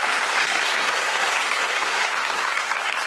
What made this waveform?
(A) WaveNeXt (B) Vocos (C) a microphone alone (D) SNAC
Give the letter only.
D